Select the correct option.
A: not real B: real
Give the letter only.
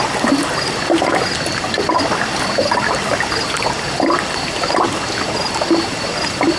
B